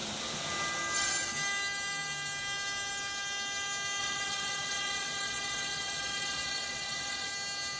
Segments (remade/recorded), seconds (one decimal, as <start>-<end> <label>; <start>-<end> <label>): 0.0-4.0 recorded; 4.0-7.3 remade; 7.3-7.8 recorded